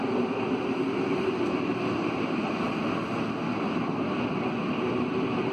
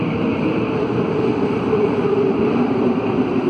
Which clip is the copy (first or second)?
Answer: second